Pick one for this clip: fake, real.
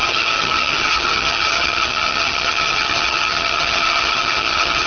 fake